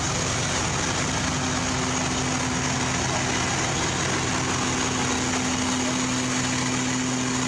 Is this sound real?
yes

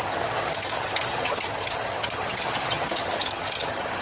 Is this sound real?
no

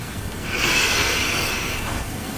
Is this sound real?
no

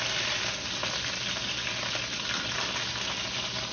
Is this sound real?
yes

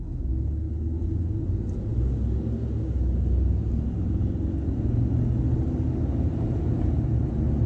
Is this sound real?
yes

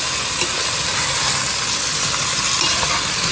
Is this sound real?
yes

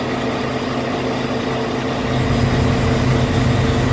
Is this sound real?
yes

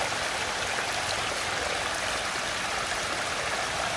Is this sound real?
yes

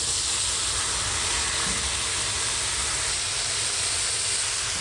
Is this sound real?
yes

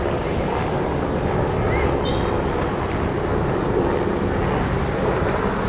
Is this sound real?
yes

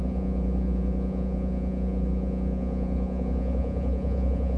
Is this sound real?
no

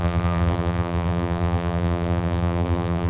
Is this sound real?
no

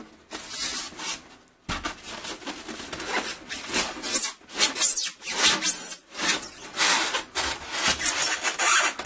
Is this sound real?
yes